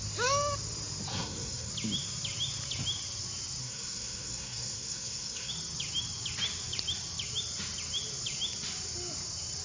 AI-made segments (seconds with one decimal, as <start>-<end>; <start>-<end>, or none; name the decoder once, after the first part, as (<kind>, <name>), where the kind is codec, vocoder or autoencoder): 1.1-1.7 (codec, SNAC); 3.6-5.5